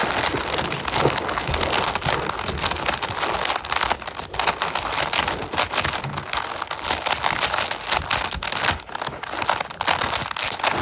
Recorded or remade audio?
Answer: recorded